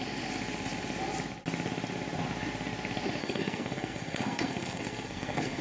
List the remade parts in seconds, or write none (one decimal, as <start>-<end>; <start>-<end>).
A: 3.2-5.6